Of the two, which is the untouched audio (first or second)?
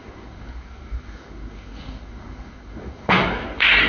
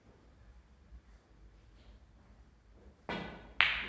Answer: second